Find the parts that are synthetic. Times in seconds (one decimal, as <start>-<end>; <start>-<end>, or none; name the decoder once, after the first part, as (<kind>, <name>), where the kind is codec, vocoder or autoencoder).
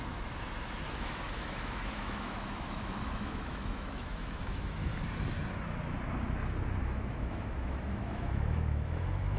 0.0-4.9 (autoencoder, DAC-VAE); 6.8-9.4